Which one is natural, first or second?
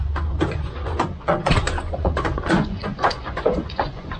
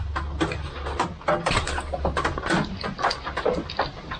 second